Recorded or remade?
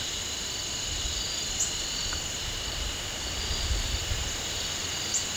recorded